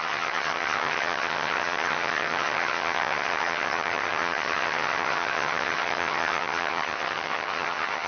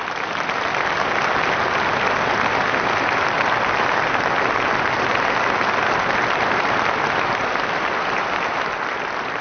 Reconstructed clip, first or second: first